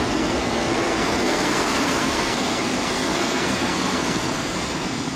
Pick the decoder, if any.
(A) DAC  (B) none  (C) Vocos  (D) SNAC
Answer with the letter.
D